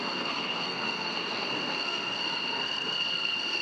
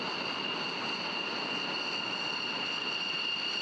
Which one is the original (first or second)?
second